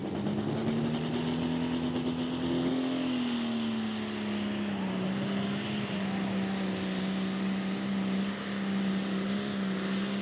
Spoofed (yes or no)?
no